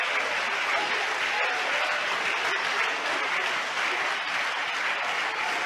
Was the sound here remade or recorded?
recorded